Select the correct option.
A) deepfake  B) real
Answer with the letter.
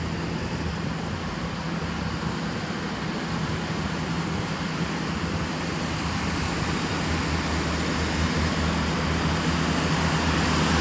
B